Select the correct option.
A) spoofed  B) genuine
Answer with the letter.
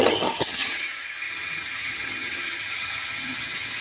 A